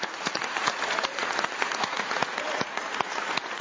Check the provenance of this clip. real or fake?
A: fake